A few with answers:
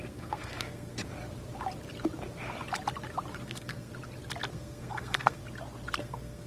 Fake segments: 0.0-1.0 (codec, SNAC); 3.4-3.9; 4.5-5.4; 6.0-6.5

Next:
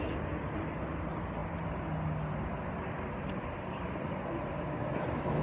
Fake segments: none

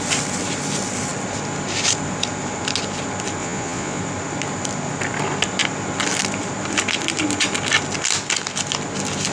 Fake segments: 3.4-4.0 (vocoder, Vocos)

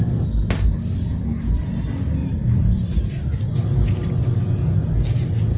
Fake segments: 2.2-3.0 (vocoder, BigVGAN v2)

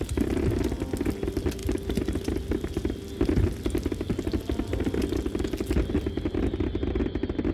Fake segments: none

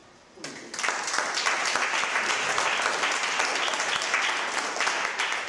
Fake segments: none